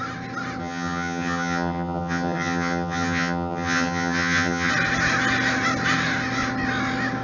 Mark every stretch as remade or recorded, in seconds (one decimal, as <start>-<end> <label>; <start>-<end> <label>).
0.0-0.6 recorded; 0.6-4.7 remade; 4.7-7.2 recorded